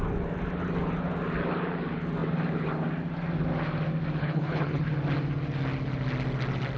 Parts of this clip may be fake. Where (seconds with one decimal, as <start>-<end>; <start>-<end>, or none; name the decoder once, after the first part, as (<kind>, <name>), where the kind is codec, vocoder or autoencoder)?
4.2-4.9 (codec, HILCodec)